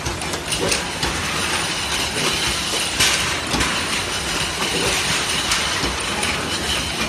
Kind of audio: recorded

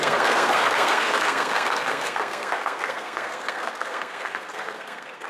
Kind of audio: remade